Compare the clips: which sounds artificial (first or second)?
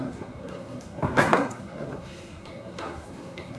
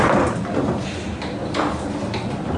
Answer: first